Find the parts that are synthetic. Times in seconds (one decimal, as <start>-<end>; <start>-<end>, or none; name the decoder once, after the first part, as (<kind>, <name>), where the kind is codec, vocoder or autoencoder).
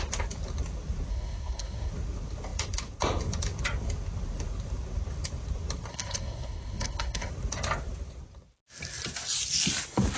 1.1-1.9 (codec, SNAC); 5.9-7.3